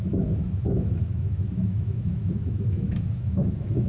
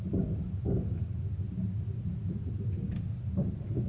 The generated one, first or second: first